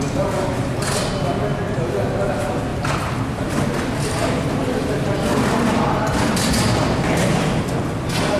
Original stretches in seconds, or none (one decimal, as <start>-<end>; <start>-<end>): 0.0-8.4